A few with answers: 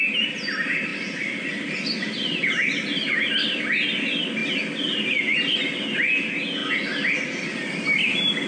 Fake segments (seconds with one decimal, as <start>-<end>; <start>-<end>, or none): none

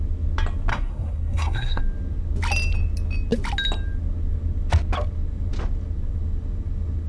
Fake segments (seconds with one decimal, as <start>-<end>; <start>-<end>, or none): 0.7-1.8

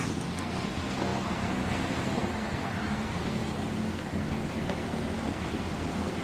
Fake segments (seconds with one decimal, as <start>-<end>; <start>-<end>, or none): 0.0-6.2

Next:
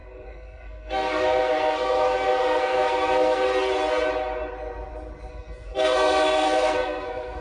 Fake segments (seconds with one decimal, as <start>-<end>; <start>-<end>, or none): 0.0-3.5; 5.3-7.4

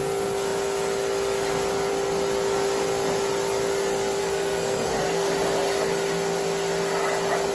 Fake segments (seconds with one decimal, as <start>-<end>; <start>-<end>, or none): 4.2-5.3